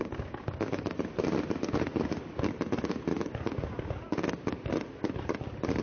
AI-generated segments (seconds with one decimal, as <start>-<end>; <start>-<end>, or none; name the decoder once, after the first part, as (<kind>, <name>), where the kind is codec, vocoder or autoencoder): 0.0-0.9 (codec, DAC); 3.1-4.7